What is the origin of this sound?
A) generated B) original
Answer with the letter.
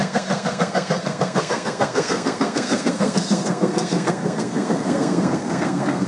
A